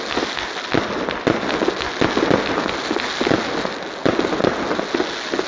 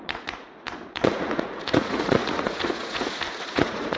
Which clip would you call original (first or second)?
first